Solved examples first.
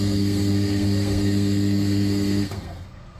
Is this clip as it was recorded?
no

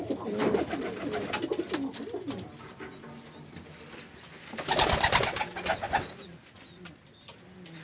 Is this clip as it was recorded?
yes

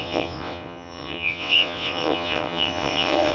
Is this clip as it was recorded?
no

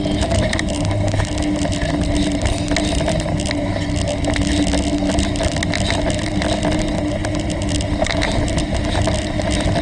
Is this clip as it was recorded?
yes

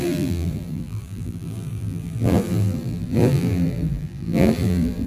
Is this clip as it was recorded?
no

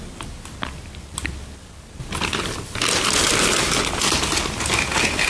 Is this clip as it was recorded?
yes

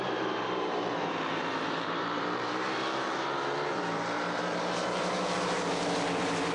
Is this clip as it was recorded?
no